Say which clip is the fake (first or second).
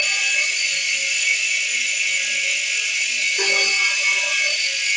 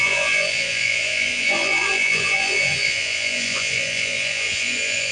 second